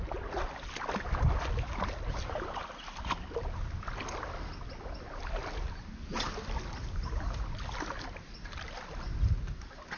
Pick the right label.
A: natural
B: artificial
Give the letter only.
A